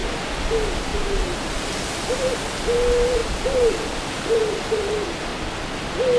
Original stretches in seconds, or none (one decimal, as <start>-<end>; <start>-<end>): 0.0-0.9; 1.5-3.2; 4.4-6.2